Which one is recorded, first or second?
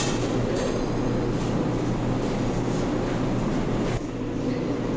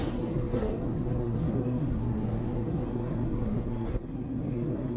first